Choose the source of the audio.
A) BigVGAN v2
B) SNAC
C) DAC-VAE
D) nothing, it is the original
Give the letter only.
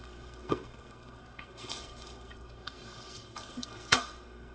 B